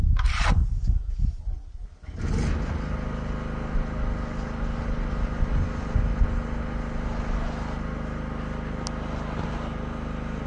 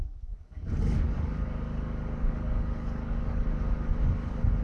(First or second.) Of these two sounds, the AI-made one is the second